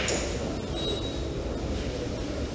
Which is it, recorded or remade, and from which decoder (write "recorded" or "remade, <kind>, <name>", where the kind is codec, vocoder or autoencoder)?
recorded